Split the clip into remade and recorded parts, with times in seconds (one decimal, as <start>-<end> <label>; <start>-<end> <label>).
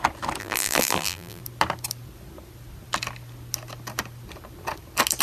0.0-0.4 recorded; 0.4-1.4 remade; 1.4-5.2 recorded